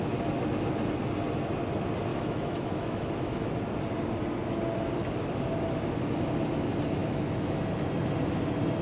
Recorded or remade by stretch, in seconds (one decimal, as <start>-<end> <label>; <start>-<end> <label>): 0.0-2.1 recorded; 2.1-3.5 remade; 3.5-7.0 recorded; 7.0-7.6 remade; 7.6-8.8 recorded